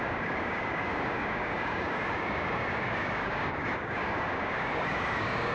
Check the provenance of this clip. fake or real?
fake